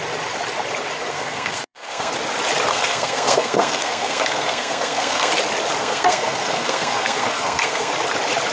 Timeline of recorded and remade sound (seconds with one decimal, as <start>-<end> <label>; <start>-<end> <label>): 0.0-1.1 recorded; 1.1-2.1 remade; 2.1-2.7 recorded; 2.7-5.3 remade; 5.3-5.8 recorded; 5.8-7.9 remade; 7.9-8.5 recorded